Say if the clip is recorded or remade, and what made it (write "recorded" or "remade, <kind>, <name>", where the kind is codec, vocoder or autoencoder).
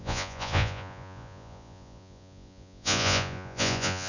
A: remade, vocoder, Vocos